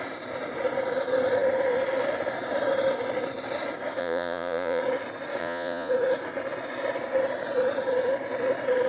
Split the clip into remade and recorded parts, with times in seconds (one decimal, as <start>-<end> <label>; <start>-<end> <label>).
0.0-4.0 recorded; 4.0-4.8 remade; 4.8-5.4 recorded; 5.4-5.9 remade; 5.9-8.9 recorded